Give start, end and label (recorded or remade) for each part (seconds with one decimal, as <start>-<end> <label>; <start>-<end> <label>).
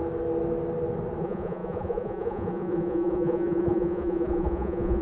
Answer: 0.0-1.2 recorded; 1.2-5.0 remade